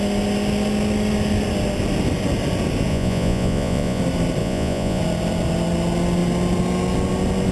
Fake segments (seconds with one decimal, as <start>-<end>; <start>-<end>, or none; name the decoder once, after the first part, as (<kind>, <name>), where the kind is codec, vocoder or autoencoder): 2.9-4.0 (vocoder, Vocos); 4.4-5.0